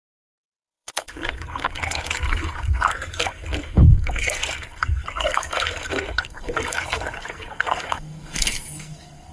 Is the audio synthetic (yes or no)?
yes